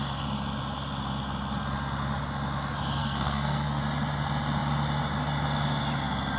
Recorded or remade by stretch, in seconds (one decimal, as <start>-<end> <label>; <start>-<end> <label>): 0.0-3.0 recorded; 3.0-3.8 remade; 3.8-6.4 recorded